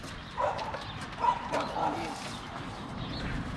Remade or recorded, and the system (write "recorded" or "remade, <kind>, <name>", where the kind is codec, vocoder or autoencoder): remade, vocoder, BigVGAN v2